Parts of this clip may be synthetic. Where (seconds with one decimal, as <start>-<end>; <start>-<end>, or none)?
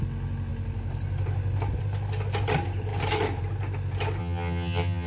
4.2-5.1